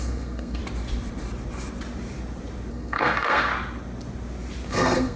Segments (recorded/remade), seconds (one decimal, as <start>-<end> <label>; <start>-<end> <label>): 0.0-0.6 remade; 0.6-2.7 recorded; 2.7-3.5 remade; 3.5-4.7 recorded; 4.7-5.2 remade